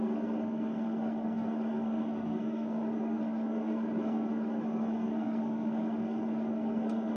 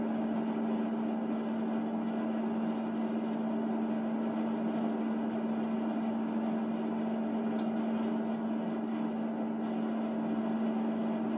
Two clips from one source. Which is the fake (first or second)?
first